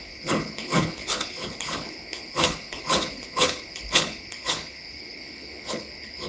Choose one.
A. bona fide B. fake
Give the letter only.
B